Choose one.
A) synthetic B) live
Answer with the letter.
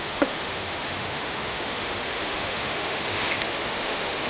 A